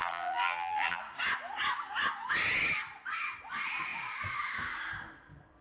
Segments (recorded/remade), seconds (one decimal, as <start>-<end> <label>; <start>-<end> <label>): 0.0-1.0 remade; 1.0-5.6 recorded